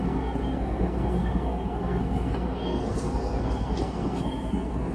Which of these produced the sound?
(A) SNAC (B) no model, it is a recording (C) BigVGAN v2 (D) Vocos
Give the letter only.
A